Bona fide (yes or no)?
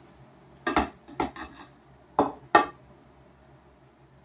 yes